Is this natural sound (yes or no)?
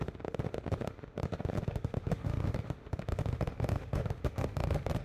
no